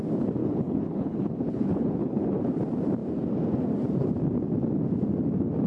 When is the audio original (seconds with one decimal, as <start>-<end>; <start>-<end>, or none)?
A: 0.0-0.4; 2.4-5.7